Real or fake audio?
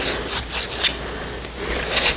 real